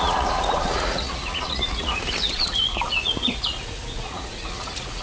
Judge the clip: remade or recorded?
remade